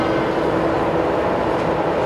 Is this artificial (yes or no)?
no